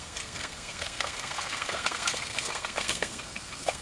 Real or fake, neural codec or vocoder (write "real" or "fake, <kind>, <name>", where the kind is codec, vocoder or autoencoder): fake, codec, SNAC